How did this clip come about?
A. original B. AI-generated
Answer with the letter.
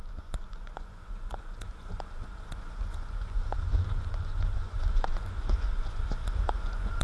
B